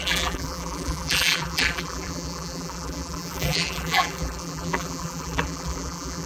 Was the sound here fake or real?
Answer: fake